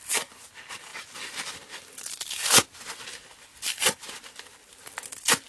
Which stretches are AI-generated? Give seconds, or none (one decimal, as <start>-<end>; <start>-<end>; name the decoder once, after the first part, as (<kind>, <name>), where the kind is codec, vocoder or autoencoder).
none